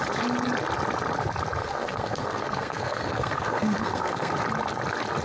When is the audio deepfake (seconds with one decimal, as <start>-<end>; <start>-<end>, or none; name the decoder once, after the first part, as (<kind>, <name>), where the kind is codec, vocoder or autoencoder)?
1.6-4.3 (codec, SNAC)